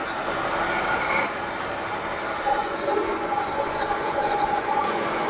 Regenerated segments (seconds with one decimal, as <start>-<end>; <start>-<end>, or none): 2.6-5.3